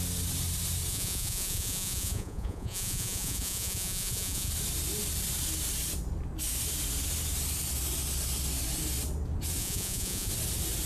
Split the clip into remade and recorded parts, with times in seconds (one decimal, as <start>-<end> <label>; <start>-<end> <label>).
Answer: 0.0-0.9 recorded; 0.9-4.5 remade; 4.5-9.6 recorded; 9.6-10.3 remade; 10.3-10.9 recorded